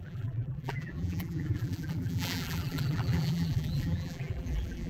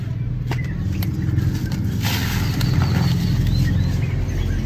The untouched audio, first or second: second